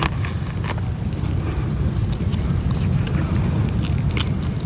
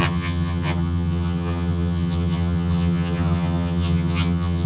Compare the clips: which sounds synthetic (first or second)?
second